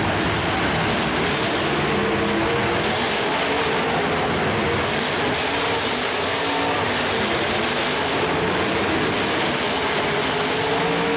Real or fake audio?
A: real